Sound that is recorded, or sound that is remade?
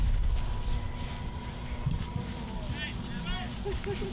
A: recorded